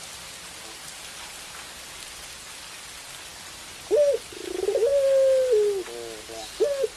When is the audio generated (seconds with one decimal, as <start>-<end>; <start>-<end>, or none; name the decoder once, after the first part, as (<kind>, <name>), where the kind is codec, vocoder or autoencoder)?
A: none